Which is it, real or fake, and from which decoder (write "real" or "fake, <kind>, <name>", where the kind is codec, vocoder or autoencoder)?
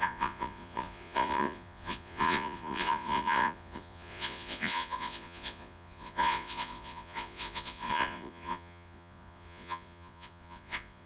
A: fake, vocoder, Vocos